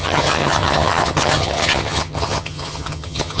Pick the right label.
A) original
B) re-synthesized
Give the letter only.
B